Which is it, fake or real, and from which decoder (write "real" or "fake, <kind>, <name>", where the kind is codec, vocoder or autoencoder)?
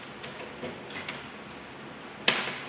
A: real